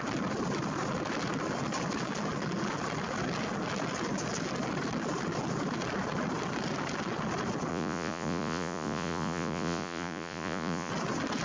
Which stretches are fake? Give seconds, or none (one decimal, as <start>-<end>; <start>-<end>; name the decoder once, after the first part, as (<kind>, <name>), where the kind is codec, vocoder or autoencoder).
7.7-10.9 (vocoder, Vocos)